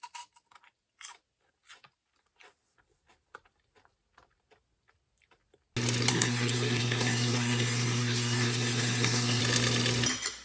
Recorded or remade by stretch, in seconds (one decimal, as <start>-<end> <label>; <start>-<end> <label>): 0.0-6.1 recorded; 6.1-9.4 remade; 9.4-10.4 recorded